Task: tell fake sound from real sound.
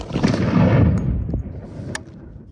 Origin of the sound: real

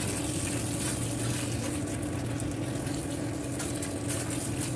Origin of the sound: real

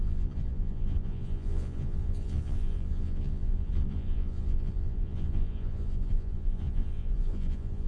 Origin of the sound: fake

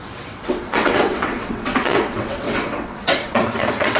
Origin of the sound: fake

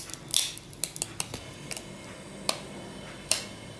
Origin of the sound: real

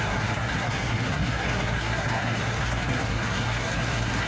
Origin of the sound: fake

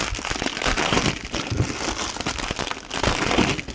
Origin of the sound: real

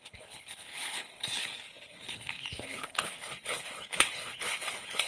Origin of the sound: fake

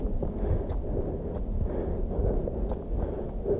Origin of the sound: real